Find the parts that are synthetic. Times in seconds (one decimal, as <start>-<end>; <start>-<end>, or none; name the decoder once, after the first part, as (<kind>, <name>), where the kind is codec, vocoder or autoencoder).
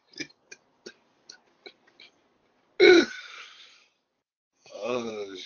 4.4-5.1 (vocoder, Vocos)